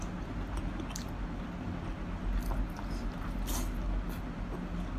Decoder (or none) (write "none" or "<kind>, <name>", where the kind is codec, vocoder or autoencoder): none